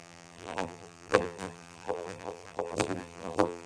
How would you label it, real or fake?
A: fake